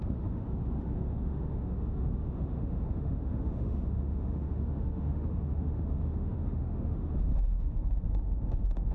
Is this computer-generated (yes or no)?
yes